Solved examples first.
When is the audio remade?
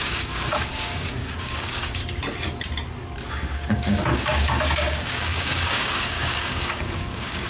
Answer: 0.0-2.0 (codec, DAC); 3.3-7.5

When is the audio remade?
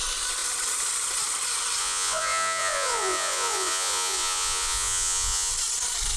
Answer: 1.8-5.5 (vocoder, Vocos)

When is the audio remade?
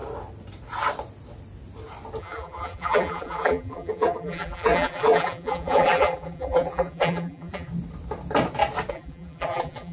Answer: 2.2-7.7 (vocoder, BigVGAN v2); 8.9-9.9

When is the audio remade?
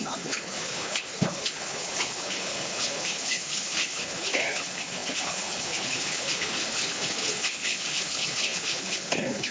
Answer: 0.0-9.5 (codec, HILCodec)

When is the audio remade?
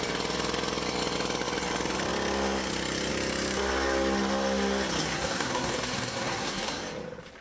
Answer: 5.0-6.8 (codec, SNAC)